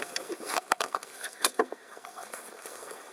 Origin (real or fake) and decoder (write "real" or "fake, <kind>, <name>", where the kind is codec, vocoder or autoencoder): fake, codec, SNAC